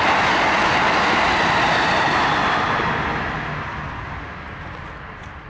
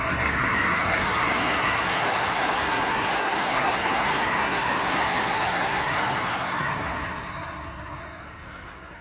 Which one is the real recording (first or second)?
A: first